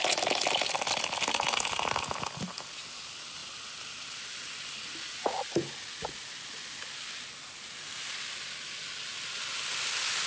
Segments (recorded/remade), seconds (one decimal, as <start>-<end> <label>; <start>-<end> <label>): 0.0-10.3 recorded